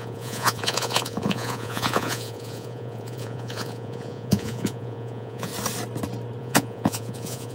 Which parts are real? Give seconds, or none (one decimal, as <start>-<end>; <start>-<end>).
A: 5.5-6.4